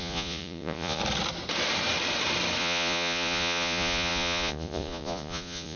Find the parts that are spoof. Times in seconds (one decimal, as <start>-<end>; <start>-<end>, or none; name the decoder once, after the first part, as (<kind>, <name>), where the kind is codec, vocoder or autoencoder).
0.0-1.0 (vocoder, Vocos); 2.6-5.8